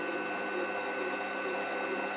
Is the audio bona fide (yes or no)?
yes